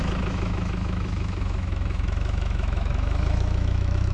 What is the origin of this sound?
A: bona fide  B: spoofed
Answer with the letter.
B